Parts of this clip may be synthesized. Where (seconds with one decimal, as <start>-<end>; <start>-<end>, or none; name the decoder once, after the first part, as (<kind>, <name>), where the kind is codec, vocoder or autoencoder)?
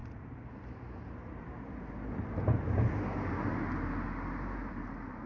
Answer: none